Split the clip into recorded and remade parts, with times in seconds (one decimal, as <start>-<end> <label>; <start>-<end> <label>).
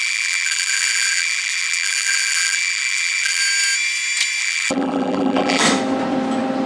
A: 0.0-3.4 remade; 3.4-4.4 recorded; 4.4-5.6 remade; 5.6-6.7 recorded